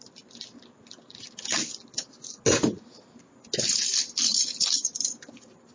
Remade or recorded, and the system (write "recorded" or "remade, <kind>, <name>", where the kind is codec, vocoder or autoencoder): recorded